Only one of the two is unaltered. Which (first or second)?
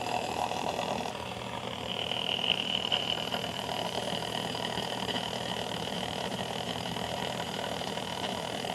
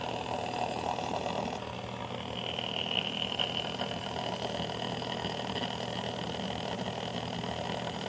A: second